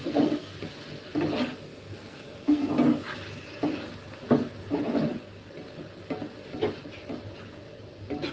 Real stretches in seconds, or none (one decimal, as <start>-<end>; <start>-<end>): 0.6-1.7; 2.7-8.3

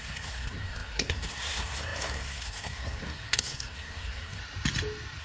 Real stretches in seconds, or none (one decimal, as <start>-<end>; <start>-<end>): 4.4-5.2

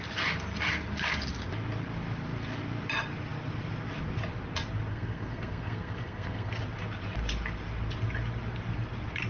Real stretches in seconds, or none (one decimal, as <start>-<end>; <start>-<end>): 0.0-4.9; 6.6-9.3

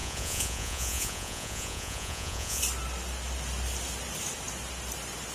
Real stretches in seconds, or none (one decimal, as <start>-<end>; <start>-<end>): 2.6-5.3

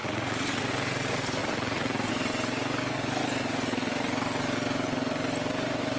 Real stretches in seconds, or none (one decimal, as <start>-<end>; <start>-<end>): 0.6-1.4; 2.1-6.0

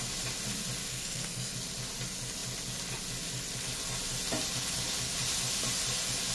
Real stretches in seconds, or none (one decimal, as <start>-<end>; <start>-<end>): 0.0-0.9; 1.5-6.3

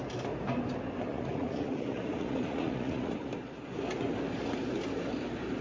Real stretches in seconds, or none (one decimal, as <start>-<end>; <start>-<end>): 0.0-1.1; 3.3-5.6

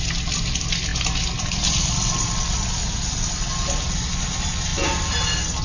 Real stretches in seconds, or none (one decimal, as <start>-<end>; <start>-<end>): 0.0-5.6